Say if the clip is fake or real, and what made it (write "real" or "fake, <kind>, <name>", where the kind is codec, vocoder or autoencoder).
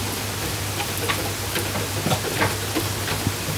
real